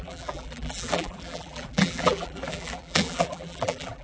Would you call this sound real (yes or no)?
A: no